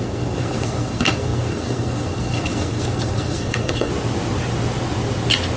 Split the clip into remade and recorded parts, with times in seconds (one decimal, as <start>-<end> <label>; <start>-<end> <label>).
0.0-3.9 remade; 3.9-5.6 recorded